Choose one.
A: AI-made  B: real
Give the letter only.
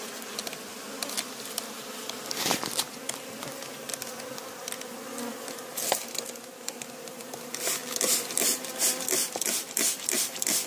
B